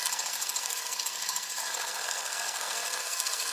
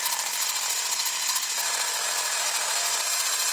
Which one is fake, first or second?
first